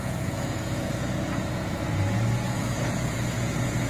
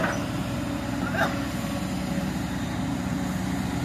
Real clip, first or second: second